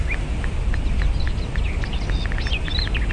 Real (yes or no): yes